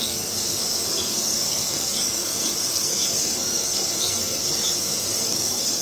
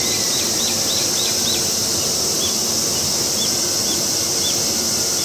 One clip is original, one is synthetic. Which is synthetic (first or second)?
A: first